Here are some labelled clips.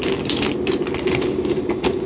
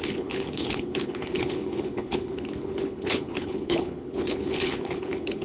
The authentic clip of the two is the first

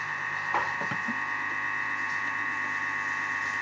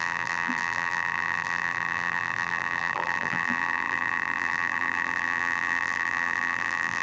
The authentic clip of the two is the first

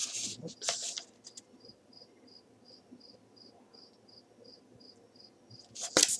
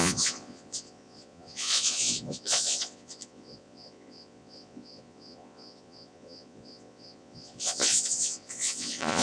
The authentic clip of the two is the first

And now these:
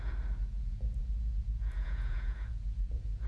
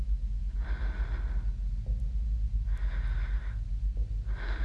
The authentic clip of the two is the second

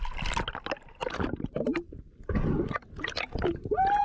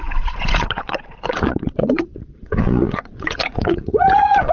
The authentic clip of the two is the first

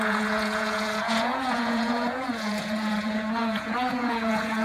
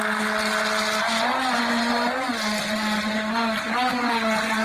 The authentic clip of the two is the second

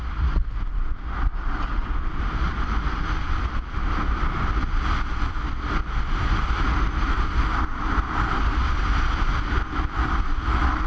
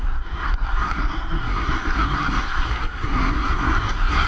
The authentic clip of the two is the first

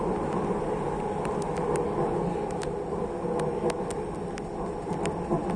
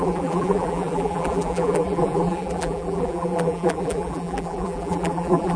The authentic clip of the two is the first